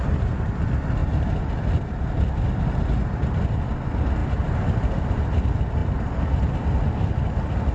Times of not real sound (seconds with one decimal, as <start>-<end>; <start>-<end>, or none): none